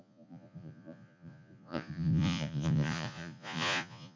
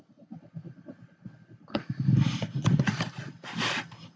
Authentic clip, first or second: second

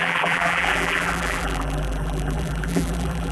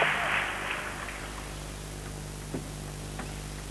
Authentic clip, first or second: second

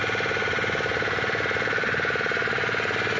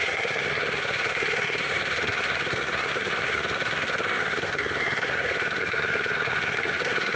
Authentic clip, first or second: first